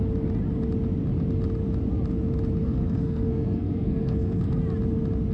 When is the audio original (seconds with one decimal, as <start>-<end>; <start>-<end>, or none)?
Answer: 0.0-2.6; 4.6-5.3